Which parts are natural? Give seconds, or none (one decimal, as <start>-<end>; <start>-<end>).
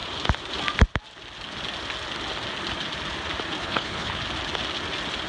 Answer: 0.0-3.6; 4.2-5.3